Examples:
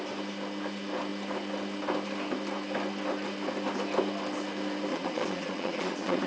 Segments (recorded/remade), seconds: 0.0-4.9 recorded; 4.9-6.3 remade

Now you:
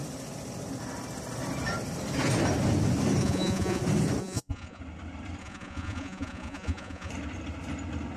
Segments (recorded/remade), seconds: 0.0-3.2 recorded; 3.2-3.8 remade; 3.8-4.2 recorded; 4.2-4.8 remade; 4.8-5.4 recorded; 5.4-7.1 remade; 7.1-8.2 recorded

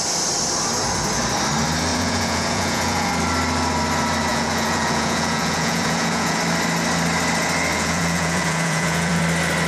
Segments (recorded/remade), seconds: 0.0-1.9 recorded; 1.9-3.1 remade; 3.1-4.3 recorded; 4.3-6.4 remade; 6.4-7.7 recorded; 7.7-9.2 remade; 9.2-9.7 recorded

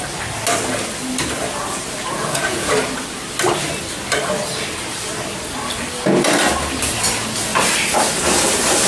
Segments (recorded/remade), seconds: 0.0-2.2 recorded; 2.2-2.7 remade; 2.7-8.9 recorded

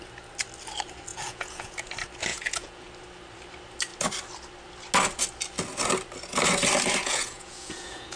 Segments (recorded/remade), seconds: 0.0-1.1 recorded; 1.1-1.9 remade; 1.9-2.3 recorded; 2.3-2.9 remade; 2.9-7.0 recorded; 7.0-8.2 remade

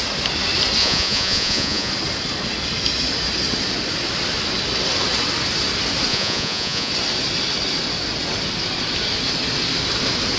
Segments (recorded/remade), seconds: 0.0-0.8 recorded; 0.8-1.9 remade; 1.9-6.1 recorded; 6.1-6.9 remade; 6.9-10.4 recorded